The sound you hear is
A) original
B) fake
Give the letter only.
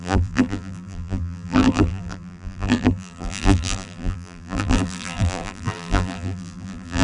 B